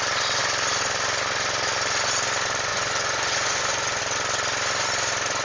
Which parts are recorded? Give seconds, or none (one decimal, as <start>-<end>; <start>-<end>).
0.0-2.7; 4.0-5.4